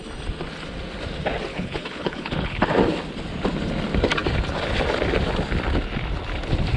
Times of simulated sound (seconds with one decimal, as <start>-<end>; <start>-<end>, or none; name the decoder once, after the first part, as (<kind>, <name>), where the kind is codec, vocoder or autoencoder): 1.5-2.6 (codec, HILCodec)